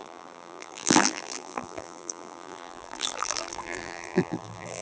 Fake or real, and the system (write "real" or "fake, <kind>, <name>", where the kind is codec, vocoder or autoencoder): fake, vocoder, BigVGAN v2